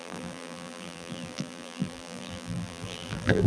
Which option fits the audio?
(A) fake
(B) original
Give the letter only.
A